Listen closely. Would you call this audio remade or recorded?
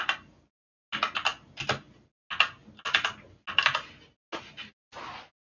recorded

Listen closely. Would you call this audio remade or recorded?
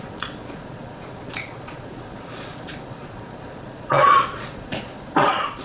remade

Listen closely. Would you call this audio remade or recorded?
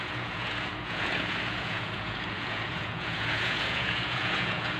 remade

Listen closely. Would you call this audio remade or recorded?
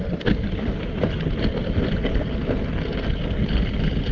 recorded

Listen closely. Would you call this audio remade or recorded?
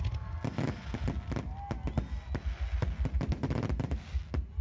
recorded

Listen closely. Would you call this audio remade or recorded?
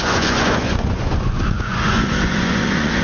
remade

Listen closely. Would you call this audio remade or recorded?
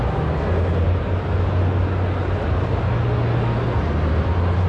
recorded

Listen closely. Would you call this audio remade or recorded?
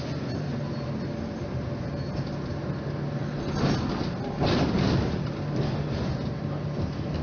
recorded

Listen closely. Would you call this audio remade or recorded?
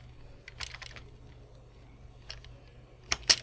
recorded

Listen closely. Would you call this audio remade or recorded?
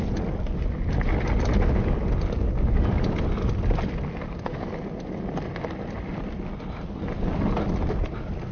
recorded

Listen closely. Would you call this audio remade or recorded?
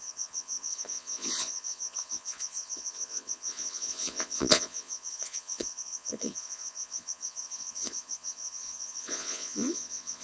remade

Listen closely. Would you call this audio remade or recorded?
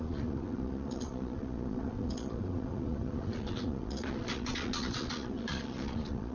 remade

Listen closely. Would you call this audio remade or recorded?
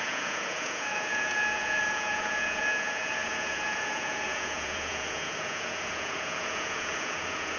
remade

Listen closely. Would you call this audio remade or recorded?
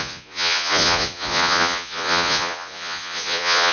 remade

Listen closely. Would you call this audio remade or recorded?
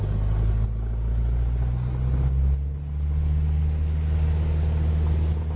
recorded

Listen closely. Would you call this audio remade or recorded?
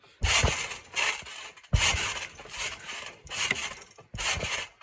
recorded